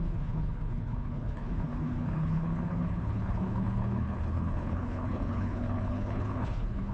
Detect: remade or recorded remade